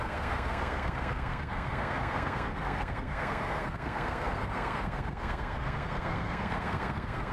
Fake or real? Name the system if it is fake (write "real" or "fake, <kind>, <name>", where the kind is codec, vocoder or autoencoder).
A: fake, codec, SNAC